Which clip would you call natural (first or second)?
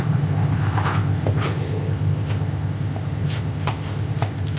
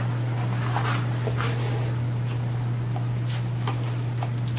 second